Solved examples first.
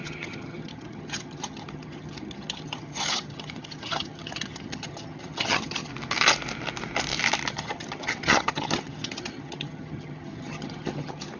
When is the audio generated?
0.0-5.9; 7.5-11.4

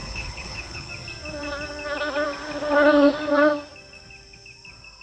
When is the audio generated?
0.0-0.9

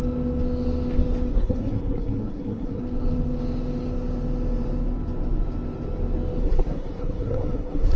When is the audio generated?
1.3-2.8; 6.4-8.0

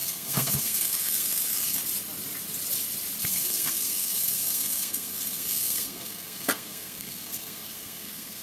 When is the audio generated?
0.0-1.8; 3.2-8.4

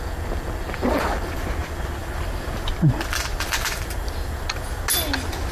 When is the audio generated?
2.0-2.7; 3.3-4.8